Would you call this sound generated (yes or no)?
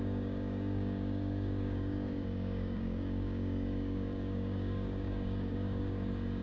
yes